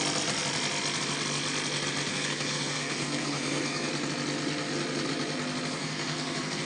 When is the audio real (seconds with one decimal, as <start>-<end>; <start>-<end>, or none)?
0.0-2.1; 3.9-5.8